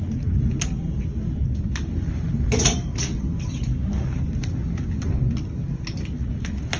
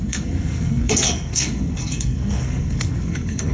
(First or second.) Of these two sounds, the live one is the first